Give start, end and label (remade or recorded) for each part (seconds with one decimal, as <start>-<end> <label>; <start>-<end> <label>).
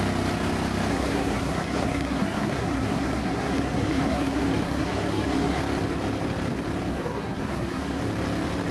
0.0-0.9 recorded; 0.9-5.6 remade; 5.6-6.9 recorded; 6.9-8.0 remade; 8.0-8.7 recorded